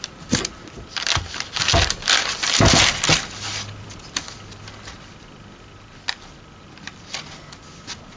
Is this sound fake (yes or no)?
no